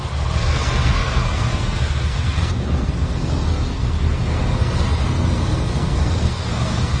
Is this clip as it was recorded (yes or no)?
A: no